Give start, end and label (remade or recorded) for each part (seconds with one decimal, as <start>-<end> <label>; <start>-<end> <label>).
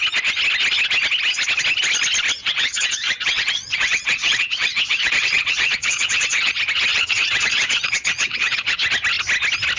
0.0-2.4 recorded; 2.4-6.5 remade; 6.5-6.9 recorded; 6.9-8.8 remade; 8.8-9.8 recorded